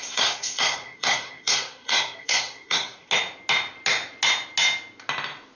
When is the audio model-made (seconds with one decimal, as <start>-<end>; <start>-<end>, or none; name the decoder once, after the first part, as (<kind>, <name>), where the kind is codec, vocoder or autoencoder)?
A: 0.0-3.1 (codec, SNAC)